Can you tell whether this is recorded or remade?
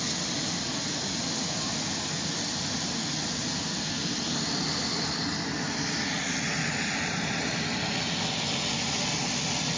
recorded